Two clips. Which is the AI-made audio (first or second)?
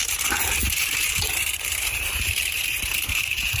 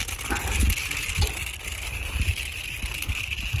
first